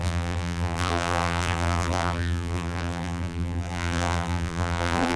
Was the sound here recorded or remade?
remade